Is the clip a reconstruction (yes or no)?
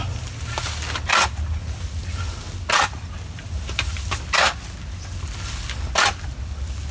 no